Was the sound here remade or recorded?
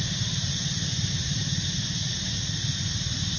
recorded